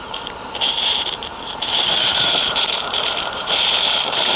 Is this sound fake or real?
fake